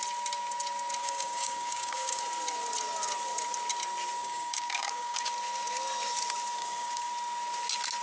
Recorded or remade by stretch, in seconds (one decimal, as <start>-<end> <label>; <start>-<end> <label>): 0.0-1.0 recorded; 1.0-2.2 remade; 2.2-4.2 recorded; 4.2-5.3 remade; 5.3-6.6 recorded; 6.6-7.1 remade; 7.1-8.0 recorded